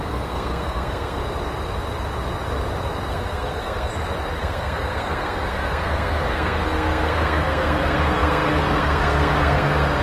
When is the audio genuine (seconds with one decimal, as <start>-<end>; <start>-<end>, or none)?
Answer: 1.2-3.1; 3.9-4.4